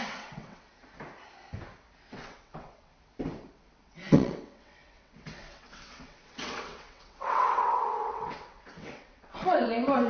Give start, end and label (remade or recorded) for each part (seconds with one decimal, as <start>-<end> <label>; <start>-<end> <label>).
0.0-0.7 remade; 0.7-2.1 recorded; 2.1-2.9 remade; 2.9-3.5 recorded; 3.5-10.1 remade